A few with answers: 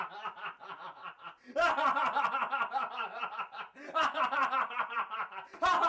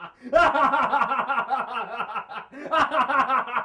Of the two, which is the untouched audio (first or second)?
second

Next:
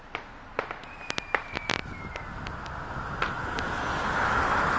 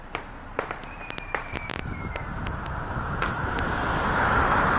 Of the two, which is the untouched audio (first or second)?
first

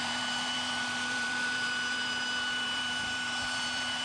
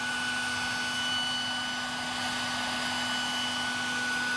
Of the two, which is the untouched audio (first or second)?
second